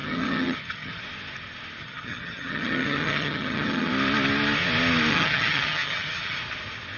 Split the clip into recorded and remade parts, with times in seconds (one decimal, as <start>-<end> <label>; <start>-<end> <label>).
0.0-1.0 remade; 1.0-1.8 recorded; 1.8-3.9 remade; 3.9-5.1 recorded; 5.1-6.4 remade; 6.4-7.0 recorded